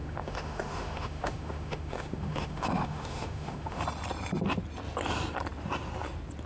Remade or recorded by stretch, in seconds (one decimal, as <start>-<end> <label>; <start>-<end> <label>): 0.0-3.8 remade; 3.8-6.5 recorded